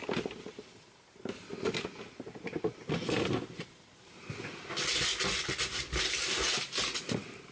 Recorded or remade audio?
recorded